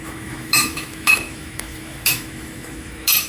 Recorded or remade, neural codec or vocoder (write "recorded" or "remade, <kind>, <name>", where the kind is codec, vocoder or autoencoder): remade, autoencoder, DAC-VAE